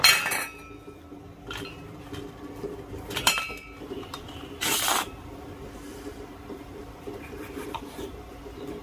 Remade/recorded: remade